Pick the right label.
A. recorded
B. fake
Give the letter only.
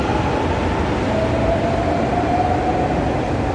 A